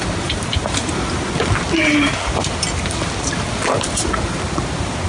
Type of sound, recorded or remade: recorded